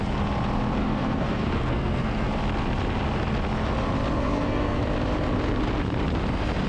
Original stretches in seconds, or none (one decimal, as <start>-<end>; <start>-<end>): 0.0-0.8; 2.3-4.2; 4.8-6.7